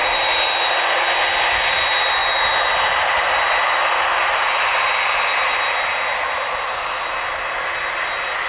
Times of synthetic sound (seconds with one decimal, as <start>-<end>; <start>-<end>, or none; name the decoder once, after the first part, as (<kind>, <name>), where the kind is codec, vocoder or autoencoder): none